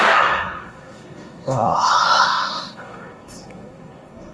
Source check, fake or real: fake